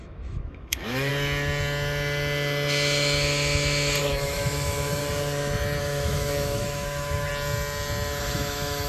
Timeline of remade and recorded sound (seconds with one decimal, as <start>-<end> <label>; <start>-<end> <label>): 0.0-1.1 remade; 1.1-4.0 recorded; 4.0-5.0 remade; 5.0-5.8 recorded; 5.8-7.3 remade; 7.3-8.2 recorded; 8.2-8.9 remade